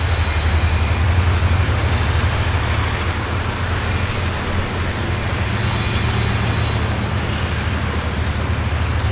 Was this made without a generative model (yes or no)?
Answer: yes